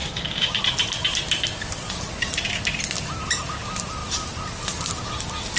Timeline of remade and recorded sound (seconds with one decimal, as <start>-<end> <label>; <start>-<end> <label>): 0.0-0.6 remade; 0.6-5.6 recorded